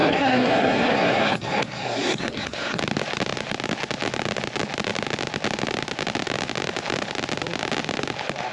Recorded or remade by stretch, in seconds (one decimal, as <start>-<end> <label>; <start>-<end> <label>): 0.0-2.8 remade; 2.8-8.5 recorded